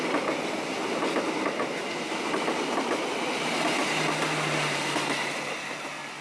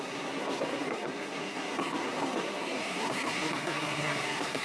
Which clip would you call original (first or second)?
first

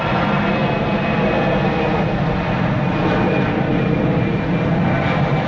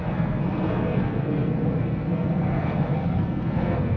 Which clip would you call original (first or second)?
first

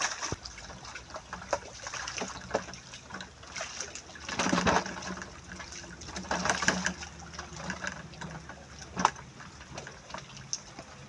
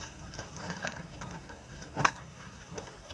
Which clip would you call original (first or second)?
first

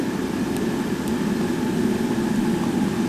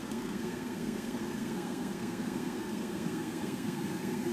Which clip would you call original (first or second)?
first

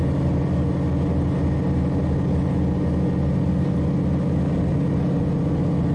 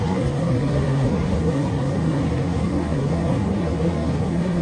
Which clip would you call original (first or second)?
first